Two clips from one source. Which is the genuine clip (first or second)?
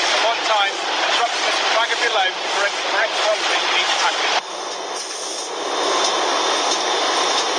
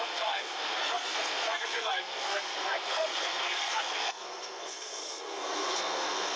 first